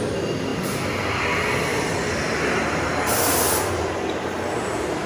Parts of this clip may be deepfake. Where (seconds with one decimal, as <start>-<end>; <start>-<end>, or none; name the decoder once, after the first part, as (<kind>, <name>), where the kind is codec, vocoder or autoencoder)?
0.5-1.2 (vocoder, BigVGAN v2); 1.7-5.1